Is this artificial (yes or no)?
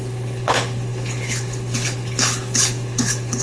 yes